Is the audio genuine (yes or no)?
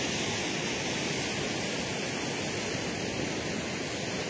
yes